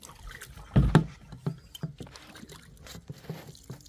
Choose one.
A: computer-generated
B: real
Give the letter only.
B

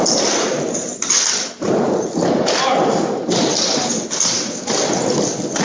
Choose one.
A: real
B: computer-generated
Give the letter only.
A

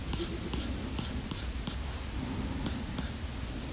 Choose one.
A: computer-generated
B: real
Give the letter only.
B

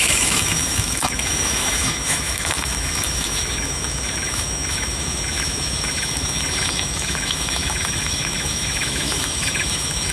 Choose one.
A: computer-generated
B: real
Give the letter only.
A